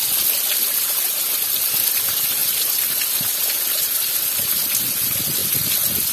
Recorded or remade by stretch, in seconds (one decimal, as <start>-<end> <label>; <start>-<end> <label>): 0.0-6.1 recorded